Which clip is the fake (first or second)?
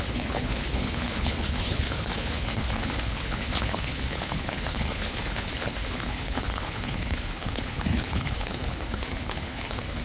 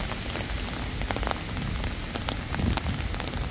first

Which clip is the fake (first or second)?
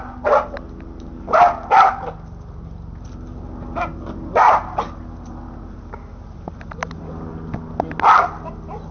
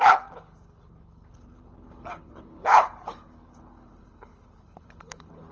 second